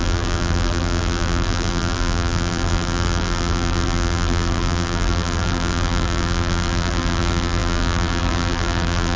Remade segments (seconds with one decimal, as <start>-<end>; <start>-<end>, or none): 0.0-9.2